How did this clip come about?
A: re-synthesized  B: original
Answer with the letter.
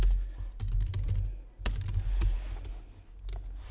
B